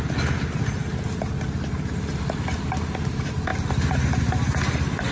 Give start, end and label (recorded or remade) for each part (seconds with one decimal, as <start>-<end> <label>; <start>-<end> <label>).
0.0-5.1 recorded